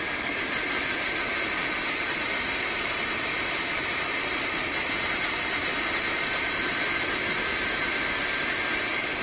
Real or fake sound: fake